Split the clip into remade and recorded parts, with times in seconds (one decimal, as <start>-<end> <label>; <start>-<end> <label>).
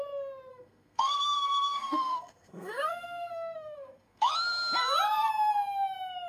0.0-0.5 recorded; 0.5-4.3 remade; 4.3-6.3 recorded